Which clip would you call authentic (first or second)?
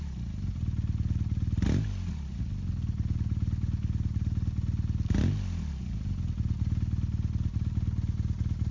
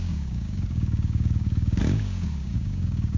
first